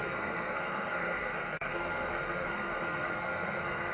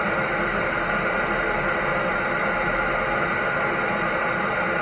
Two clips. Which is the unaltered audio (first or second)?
second